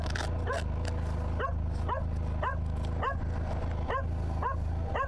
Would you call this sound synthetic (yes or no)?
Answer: no